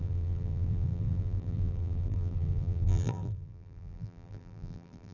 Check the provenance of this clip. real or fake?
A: fake